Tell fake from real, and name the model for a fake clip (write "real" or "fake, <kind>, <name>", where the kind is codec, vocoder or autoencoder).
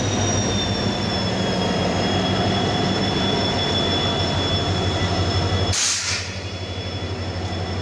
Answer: real